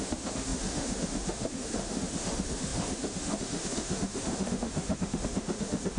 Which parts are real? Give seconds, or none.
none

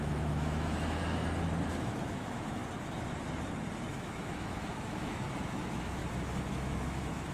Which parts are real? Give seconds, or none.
1.0-1.7; 2.6-3.9; 6.0-6.5

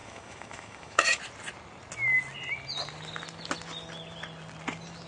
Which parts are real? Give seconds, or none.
1.2-5.1

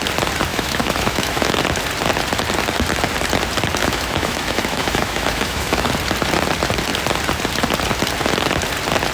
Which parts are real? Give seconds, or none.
0.0-0.5; 1.6-3.8; 5.9-9.1

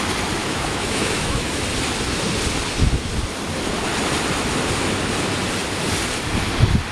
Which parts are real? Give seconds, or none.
0.0-0.4; 1.6-6.9

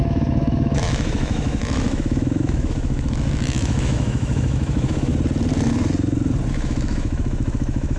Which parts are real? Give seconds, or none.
5.1-6.5

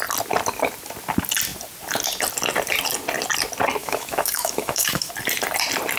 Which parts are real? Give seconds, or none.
0.0-3.8; 5.1-6.0